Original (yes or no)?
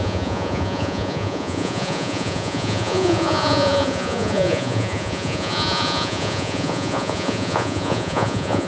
no